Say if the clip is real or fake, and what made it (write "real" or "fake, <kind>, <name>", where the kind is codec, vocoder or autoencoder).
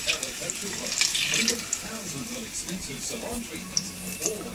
fake, vocoder, BigVGAN v2